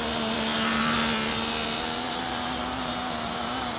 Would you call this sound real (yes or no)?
yes